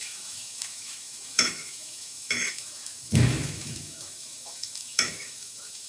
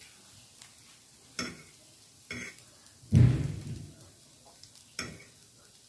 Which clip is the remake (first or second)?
first